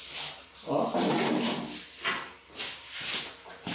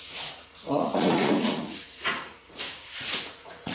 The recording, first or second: first